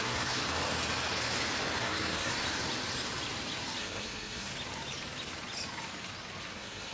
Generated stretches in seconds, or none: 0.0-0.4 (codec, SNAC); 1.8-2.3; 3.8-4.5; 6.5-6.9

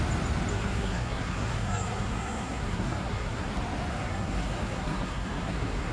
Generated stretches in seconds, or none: 0.5-3.5 (codec, SNAC); 3.9-5.9

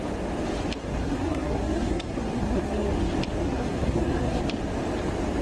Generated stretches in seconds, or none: 0.8-2.9 (codec, SNAC); 3.4-4.4